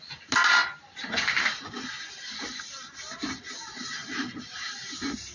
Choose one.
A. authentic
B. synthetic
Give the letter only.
A